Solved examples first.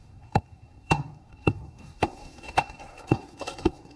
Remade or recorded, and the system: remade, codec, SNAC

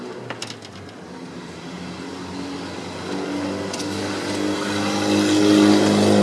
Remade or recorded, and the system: recorded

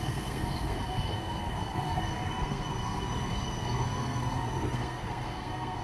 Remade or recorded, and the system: remade, codec, SNAC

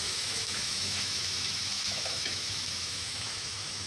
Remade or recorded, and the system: remade, autoencoder, DAC-VAE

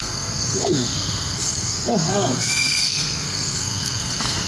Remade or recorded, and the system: remade, codec, SNAC